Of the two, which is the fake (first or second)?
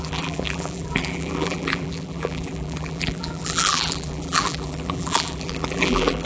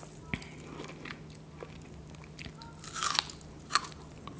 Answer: first